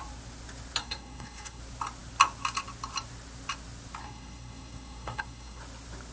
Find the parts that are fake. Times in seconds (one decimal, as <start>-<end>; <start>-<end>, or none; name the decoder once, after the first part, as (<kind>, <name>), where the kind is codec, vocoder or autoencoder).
0.8-1.6 (codec, SNAC); 4.0-5.6